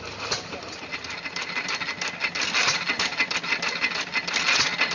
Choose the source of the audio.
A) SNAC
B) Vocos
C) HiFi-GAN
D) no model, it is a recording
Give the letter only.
D